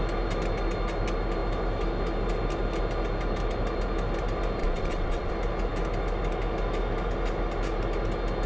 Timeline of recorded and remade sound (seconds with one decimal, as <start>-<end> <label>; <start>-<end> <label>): 0.0-4.6 recorded; 4.6-5.3 remade; 5.3-8.5 recorded